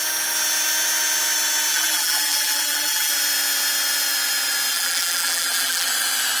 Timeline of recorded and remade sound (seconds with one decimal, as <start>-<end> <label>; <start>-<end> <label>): 0.0-1.7 recorded; 1.7-3.1 remade; 3.1-4.7 recorded; 4.7-5.9 remade; 5.9-6.4 recorded